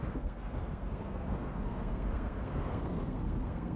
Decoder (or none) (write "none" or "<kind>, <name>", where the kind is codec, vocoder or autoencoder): codec, SNAC